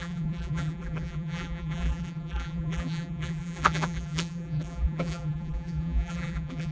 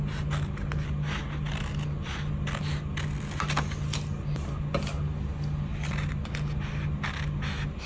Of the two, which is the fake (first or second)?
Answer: first